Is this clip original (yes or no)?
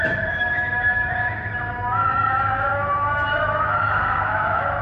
no